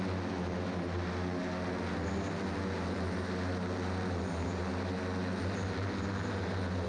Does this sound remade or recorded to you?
recorded